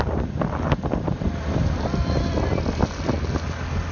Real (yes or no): yes